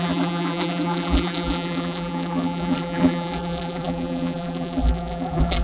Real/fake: fake